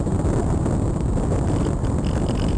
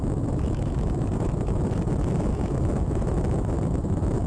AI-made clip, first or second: second